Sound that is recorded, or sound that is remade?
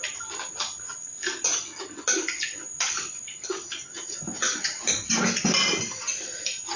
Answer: remade